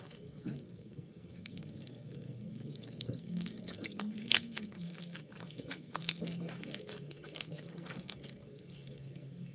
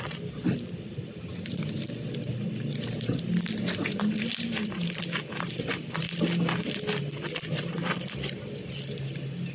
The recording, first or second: second